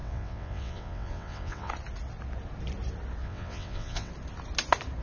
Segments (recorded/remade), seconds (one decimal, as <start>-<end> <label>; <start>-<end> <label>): 0.0-1.7 remade; 1.7-3.2 recorded; 3.2-4.1 remade; 4.1-5.0 recorded